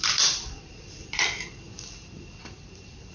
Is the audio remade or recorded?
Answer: remade